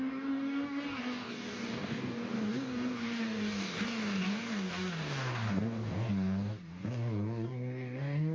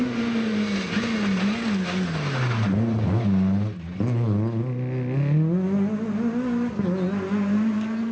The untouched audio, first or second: second